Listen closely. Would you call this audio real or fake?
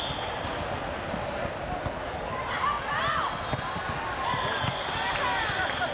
real